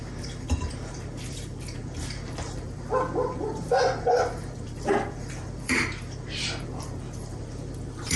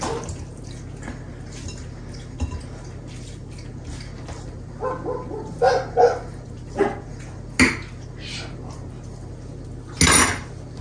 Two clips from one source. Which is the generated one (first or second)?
first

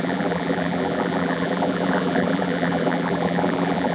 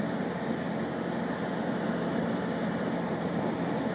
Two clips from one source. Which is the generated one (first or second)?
first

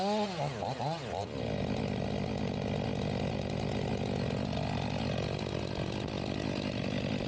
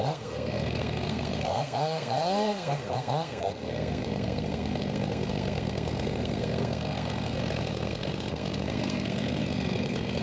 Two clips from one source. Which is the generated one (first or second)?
second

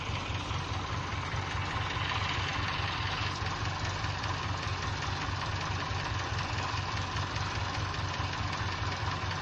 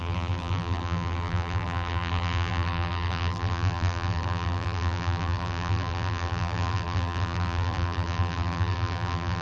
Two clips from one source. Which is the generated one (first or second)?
second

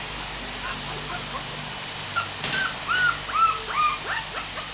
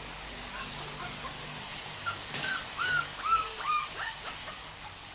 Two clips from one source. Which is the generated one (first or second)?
second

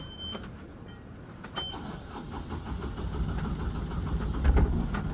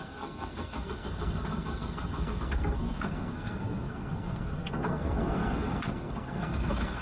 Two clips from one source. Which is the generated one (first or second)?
second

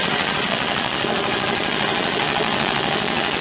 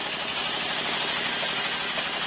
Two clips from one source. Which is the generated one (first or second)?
first